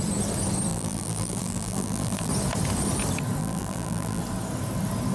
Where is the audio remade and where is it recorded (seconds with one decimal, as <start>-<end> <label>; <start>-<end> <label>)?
0.0-0.7 recorded; 0.7-2.3 remade; 2.3-3.4 recorded; 3.4-4.2 remade; 4.2-5.1 recorded